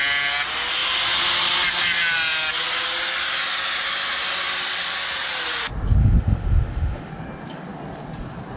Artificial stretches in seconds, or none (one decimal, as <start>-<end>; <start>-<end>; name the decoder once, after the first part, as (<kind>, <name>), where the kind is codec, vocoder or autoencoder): 6.0-7.1 (autoencoder, DAC-VAE)